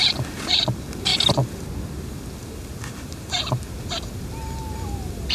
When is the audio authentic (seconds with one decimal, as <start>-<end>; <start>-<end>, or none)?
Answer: 0.0-5.3